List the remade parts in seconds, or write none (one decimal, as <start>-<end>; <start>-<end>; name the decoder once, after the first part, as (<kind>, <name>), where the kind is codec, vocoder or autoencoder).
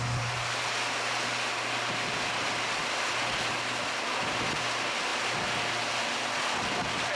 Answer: none